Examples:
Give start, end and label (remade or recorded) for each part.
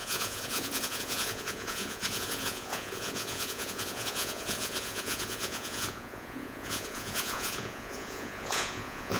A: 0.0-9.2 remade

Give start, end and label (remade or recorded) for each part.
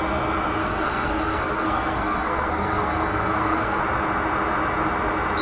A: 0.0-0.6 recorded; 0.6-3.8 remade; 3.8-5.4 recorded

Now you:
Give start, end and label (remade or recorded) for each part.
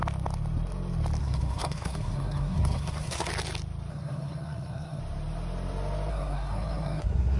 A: 0.0-1.2 recorded; 1.2-3.3 remade; 3.3-3.9 recorded; 3.9-5.0 remade; 5.0-6.1 recorded; 6.1-7.4 remade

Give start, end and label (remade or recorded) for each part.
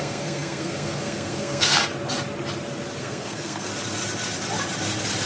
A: 0.0-1.8 remade; 1.8-3.0 recorded; 3.0-3.7 remade; 3.7-5.3 recorded